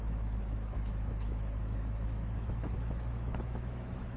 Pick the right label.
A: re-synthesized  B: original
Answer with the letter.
A